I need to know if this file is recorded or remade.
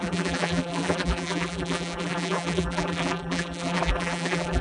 remade